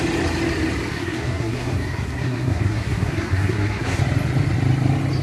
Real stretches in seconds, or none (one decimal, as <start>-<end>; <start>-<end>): 0.0-0.9; 4.0-5.2